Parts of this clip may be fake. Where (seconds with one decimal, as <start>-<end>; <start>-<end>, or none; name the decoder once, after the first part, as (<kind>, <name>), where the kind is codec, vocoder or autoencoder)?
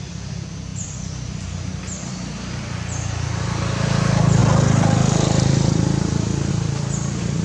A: 0.0-4.4 (vocoder, BigVGAN v2); 6.5-7.4